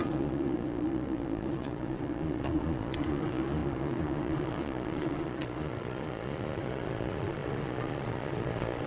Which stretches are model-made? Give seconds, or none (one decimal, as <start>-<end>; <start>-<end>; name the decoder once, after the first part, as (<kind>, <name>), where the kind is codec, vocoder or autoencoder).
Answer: 0.0-8.9 (vocoder, Vocos)